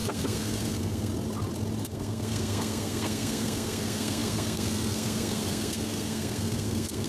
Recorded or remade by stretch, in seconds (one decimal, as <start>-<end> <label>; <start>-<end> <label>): 0.0-1.1 remade; 1.1-1.8 recorded; 1.8-7.1 remade